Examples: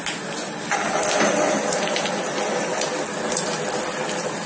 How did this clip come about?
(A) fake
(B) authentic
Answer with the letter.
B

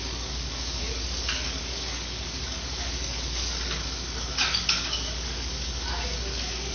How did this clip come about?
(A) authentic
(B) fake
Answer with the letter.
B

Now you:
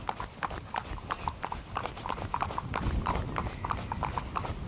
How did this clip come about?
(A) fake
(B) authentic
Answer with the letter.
B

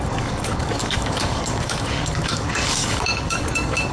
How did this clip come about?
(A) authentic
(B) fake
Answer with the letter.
B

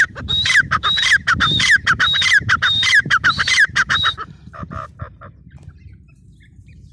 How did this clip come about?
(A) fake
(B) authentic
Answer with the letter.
A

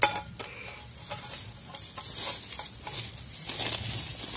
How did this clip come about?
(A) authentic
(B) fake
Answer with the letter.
A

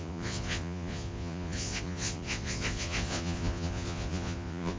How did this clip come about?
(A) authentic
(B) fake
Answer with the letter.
B